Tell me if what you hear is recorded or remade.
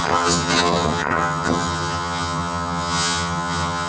remade